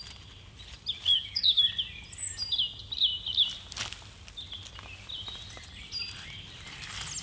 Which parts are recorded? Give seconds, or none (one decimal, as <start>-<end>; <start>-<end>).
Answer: 0.0-1.1; 1.7-7.2